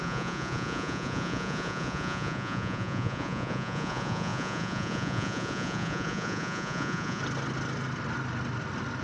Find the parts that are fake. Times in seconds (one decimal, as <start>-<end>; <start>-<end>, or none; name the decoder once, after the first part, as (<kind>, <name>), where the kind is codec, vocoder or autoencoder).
0.0-7.2 (vocoder, Vocos)